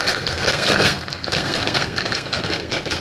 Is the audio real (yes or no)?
no